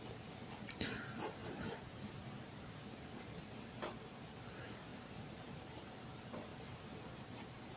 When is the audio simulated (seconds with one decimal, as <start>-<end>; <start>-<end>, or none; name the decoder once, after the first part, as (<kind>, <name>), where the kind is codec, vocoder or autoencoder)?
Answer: 1.4-3.5 (vocoder, BigVGAN v2); 4.9-5.9